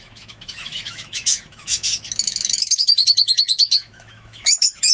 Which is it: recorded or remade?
remade